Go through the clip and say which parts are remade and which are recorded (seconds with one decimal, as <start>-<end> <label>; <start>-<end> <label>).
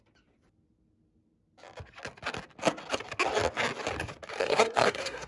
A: 0.0-4.4 recorded; 4.4-5.3 remade